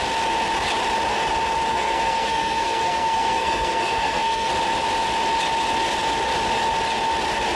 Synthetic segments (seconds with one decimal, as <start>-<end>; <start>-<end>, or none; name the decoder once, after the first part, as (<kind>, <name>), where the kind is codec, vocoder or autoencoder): 1.7-4.5 (codec, SNAC)